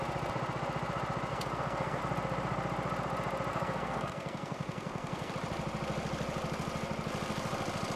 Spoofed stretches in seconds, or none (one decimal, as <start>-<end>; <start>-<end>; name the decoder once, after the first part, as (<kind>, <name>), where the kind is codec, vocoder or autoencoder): 1.3-2.0 (codec, SNAC); 3.5-5.3